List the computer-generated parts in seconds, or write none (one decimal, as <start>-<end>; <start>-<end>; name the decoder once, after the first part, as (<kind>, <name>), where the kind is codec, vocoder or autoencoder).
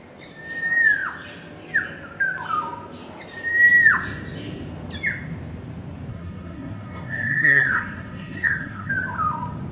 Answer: 6.1-8.9 (codec, SNAC)